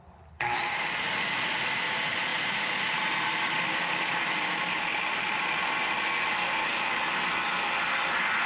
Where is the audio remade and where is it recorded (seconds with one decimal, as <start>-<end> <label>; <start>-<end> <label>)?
0.0-8.5 recorded